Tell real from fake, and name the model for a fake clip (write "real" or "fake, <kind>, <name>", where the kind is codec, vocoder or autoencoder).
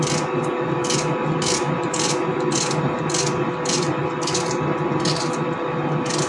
real